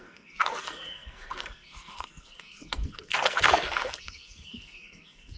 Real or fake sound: fake